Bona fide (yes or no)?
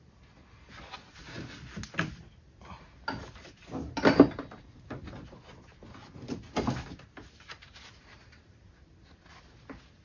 yes